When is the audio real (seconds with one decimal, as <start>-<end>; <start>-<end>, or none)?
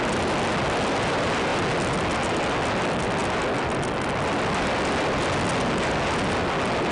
0.0-6.9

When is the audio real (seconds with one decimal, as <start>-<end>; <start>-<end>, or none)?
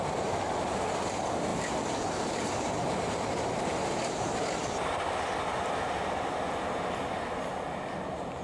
0.0-1.5; 4.4-8.4